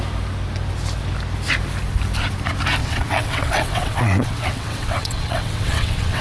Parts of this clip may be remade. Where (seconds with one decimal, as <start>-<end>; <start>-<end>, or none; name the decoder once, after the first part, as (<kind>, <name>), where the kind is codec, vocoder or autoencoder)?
2.8-6.2 (vocoder, WaveNeXt)

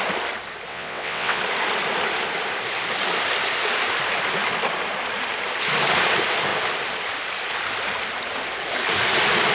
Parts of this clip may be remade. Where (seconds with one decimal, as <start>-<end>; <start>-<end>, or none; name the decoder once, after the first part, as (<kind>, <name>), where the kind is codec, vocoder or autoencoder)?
0.7-1.4 (vocoder, WaveNeXt)

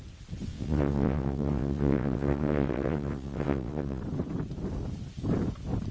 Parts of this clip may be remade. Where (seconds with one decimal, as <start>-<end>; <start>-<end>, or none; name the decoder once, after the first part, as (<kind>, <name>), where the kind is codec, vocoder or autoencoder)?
0.5-4.0 (vocoder, WaveNeXt)

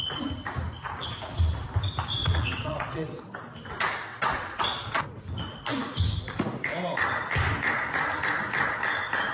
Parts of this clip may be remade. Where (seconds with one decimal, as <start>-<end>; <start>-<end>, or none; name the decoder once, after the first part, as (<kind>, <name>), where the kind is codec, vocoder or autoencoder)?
2.2-3.2 (vocoder, WaveNeXt); 4.1-4.6

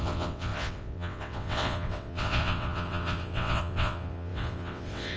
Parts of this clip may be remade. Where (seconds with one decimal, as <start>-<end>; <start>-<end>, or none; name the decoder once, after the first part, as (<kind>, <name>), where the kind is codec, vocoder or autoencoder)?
0.0-5.2 (vocoder, WaveNeXt)

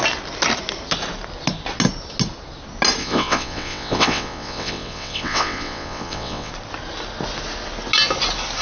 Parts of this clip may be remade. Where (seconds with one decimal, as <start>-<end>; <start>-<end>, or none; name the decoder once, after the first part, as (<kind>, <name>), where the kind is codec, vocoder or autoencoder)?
3.0-6.5 (vocoder, WaveNeXt)

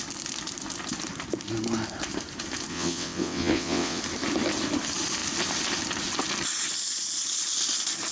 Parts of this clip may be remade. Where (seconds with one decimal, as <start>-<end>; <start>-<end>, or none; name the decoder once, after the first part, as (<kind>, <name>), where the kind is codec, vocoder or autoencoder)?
2.7-4.0 (vocoder, WaveNeXt)